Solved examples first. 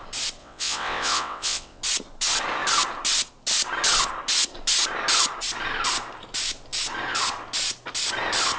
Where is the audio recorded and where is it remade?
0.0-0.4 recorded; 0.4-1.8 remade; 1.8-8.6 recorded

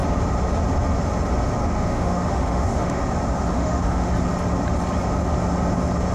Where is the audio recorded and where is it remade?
0.0-1.6 recorded; 1.6-3.0 remade; 3.0-3.5 recorded; 3.5-4.1 remade; 4.1-6.1 recorded